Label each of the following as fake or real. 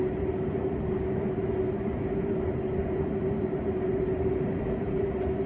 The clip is real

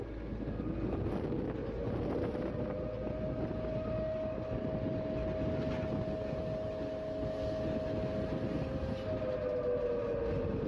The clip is real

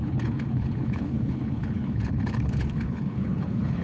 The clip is fake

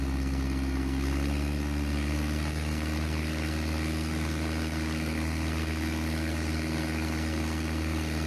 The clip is fake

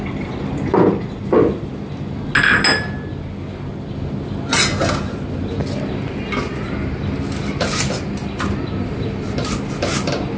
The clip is real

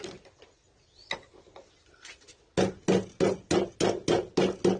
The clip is real